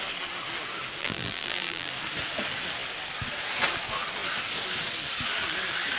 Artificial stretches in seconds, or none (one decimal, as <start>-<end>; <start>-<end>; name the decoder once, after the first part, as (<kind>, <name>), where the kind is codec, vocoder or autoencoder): 1.0-1.9 (vocoder, BigVGAN v2)